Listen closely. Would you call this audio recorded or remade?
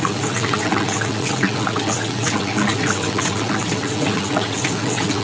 remade